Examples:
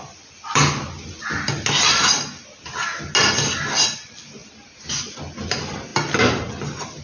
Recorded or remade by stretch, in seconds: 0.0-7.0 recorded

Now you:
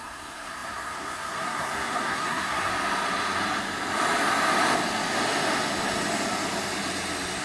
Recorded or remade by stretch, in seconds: 0.0-2.7 remade; 2.7-7.4 recorded

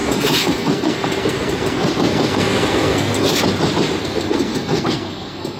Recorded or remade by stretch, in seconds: 0.0-3.4 remade; 3.4-4.0 recorded; 4.0-5.6 remade

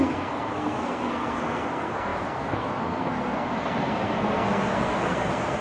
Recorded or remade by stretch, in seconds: 0.0-5.6 remade

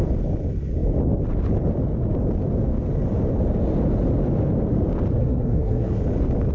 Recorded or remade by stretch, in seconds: 0.0-5.2 recorded; 5.2-6.0 remade; 6.0-6.5 recorded

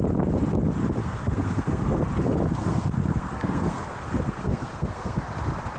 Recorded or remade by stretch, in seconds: 0.0-1.0 recorded; 1.0-2.0 remade; 2.0-2.6 recorded; 2.6-5.2 remade; 5.2-5.8 recorded

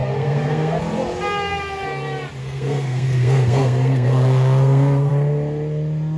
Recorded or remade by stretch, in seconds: 0.0-0.8 remade; 0.8-2.4 recorded; 2.4-5.1 remade; 5.1-6.2 recorded